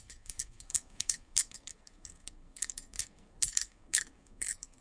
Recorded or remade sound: remade